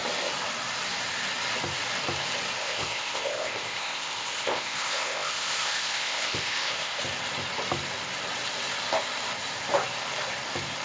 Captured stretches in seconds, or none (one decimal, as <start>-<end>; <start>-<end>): 0.0-2.6; 7.0-10.8